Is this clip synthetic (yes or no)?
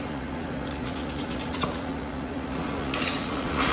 yes